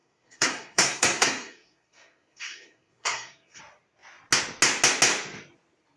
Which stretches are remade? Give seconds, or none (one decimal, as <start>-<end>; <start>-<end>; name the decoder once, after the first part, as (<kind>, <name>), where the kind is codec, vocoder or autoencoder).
0.0-3.6 (codec, SNAC)